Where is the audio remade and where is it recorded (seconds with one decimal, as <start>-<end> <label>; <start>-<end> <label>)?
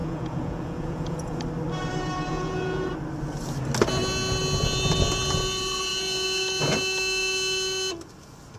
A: 0.0-1.4 remade; 1.4-2.3 recorded; 2.3-2.9 remade; 2.9-8.6 recorded